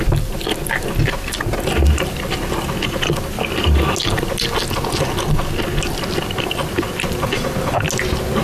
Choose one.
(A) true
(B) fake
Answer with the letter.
A